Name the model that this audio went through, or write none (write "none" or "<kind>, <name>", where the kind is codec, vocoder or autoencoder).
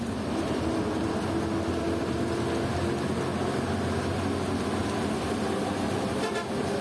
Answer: none